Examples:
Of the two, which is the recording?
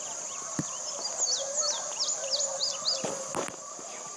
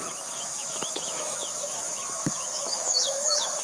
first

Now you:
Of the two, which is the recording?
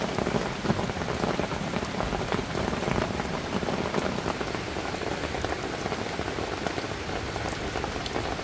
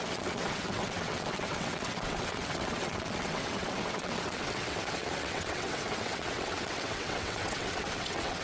first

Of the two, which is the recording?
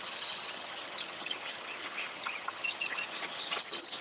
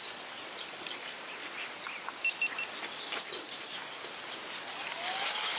second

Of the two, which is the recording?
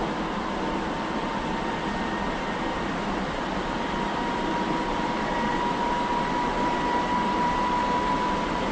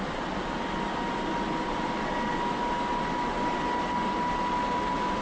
second